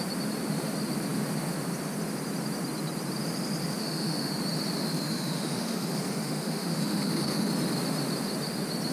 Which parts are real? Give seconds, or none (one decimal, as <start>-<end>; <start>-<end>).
0.0-3.8; 4.3-4.8; 7.5-8.9